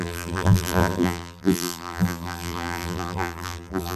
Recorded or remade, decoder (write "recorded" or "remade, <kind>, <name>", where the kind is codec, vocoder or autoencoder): remade, vocoder, BigVGAN v2